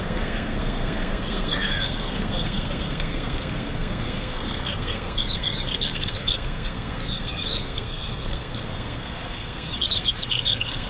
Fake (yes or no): yes